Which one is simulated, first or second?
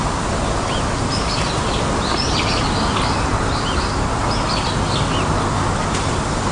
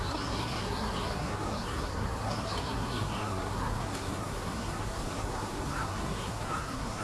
second